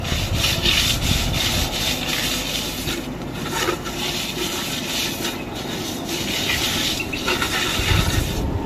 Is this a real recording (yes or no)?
yes